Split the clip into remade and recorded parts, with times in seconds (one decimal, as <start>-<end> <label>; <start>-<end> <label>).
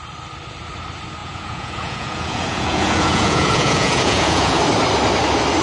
0.0-1.2 recorded; 1.2-4.6 remade; 4.6-5.6 recorded